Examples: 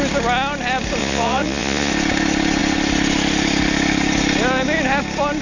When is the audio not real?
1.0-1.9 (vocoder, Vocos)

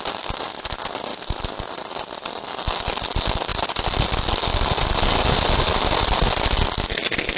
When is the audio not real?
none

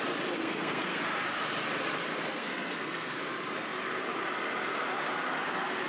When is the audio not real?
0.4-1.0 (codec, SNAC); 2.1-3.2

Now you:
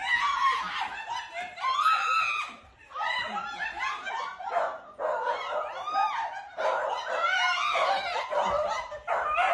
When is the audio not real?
none